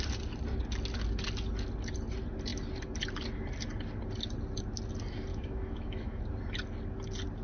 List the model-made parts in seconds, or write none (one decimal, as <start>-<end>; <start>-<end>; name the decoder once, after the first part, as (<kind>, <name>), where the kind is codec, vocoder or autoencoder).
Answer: 5.3-6.2 (autoencoder, DAC-VAE)